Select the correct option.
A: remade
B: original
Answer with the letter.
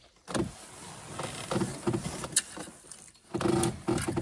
B